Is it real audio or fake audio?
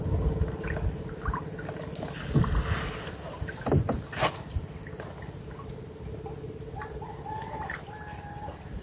real